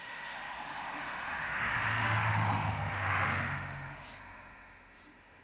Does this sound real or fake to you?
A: fake